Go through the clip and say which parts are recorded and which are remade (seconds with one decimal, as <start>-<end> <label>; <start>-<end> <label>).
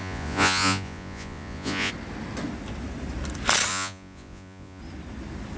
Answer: 0.0-1.9 remade; 1.9-3.7 recorded; 3.7-4.8 remade; 4.8-5.6 recorded